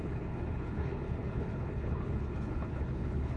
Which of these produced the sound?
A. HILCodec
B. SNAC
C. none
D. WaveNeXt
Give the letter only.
A